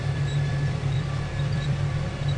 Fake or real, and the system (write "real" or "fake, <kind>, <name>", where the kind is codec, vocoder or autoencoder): fake, vocoder, BigVGAN v2